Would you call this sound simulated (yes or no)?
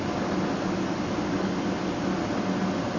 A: no